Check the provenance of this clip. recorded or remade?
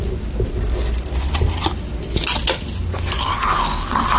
recorded